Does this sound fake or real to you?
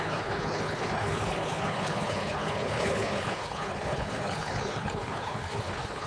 fake